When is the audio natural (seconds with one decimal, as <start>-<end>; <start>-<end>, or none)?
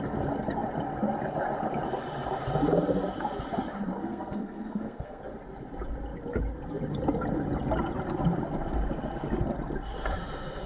0.0-4.0; 5.2-10.7